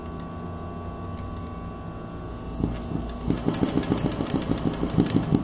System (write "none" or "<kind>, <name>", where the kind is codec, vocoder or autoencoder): none